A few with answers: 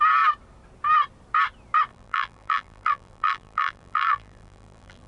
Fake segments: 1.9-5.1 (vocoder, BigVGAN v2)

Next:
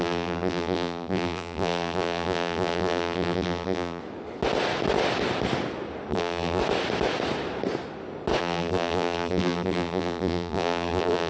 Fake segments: 0.0-4.0 (vocoder, BigVGAN v2); 6.1-6.6; 8.4-11.3

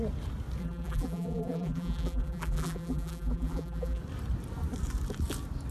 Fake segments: 0.6-4.0 (vocoder, BigVGAN v2)

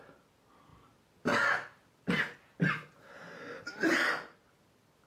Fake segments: none

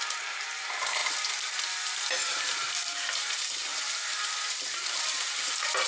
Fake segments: 0.0-1.0 (vocoder, BigVGAN v2); 2.3-5.9

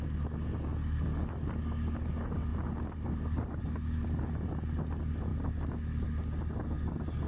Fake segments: 2.5-3.6 (vocoder, BigVGAN v2)

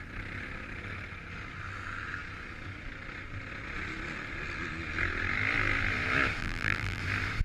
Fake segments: 6.4-7.0 (vocoder, BigVGAN v2)

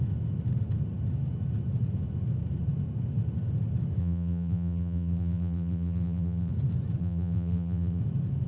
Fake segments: 4.0-6.5 (vocoder, BigVGAN v2); 7.0-8.0